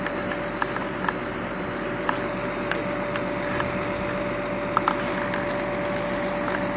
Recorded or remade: recorded